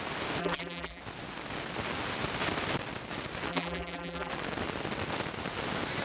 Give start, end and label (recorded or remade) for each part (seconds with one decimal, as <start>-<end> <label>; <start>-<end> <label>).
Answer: 0.0-0.4 recorded; 0.4-1.0 remade; 1.0-3.5 recorded; 3.5-4.3 remade; 4.3-6.0 recorded